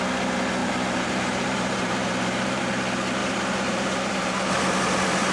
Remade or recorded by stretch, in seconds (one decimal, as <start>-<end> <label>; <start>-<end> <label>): 0.0-0.6 recorded; 0.6-2.6 remade; 2.6-3.2 recorded; 3.2-4.5 remade; 4.5-5.3 recorded